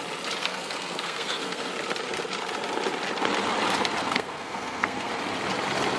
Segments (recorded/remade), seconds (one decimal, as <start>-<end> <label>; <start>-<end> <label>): 0.0-0.4 recorded; 0.4-1.7 remade; 1.7-4.0 recorded; 4.0-5.1 remade; 5.1-6.0 recorded